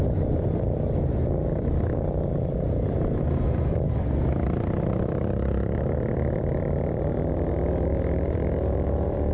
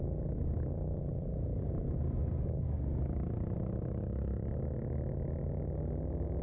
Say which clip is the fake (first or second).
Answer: first